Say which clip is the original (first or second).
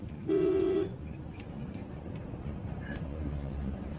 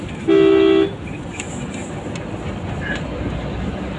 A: second